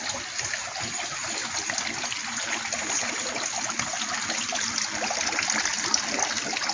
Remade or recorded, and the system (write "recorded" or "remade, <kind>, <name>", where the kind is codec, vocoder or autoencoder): recorded